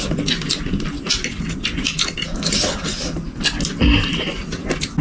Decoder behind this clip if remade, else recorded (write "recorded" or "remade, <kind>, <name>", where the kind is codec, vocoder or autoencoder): recorded